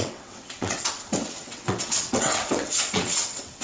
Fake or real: fake